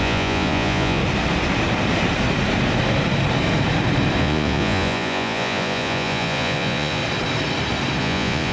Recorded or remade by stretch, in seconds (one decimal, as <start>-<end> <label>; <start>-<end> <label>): 0.0-1.0 remade; 1.0-4.2 recorded; 4.2-7.0 remade; 7.0-8.0 recorded; 8.0-8.5 remade